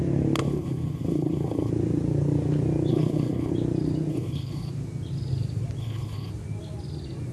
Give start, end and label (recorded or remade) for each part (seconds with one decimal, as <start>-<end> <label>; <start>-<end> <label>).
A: 0.0-0.4 recorded; 0.4-1.7 remade; 1.7-2.9 recorded; 2.9-3.5 remade; 3.5-4.1 recorded; 4.1-4.7 remade; 4.7-5.8 recorded; 5.8-6.3 remade; 6.3-7.3 recorded